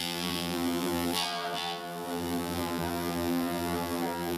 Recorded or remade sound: remade